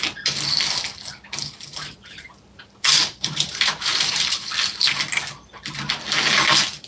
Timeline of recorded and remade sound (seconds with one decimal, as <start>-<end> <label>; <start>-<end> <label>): 0.0-1.7 recorded; 1.7-4.5 remade; 4.5-6.9 recorded